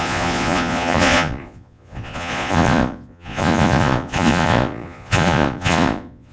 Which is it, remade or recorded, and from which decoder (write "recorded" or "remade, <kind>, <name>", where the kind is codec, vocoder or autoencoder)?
remade, vocoder, Vocos